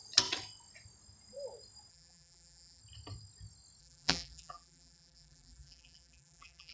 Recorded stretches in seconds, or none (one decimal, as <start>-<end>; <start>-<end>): 0.0-1.9; 2.8-3.8